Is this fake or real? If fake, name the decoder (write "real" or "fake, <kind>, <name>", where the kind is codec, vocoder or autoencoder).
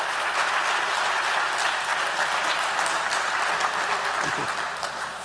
real